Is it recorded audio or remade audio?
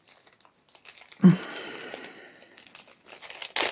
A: recorded